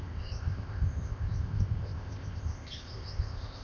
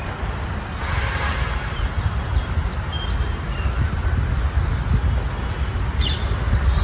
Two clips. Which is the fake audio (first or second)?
first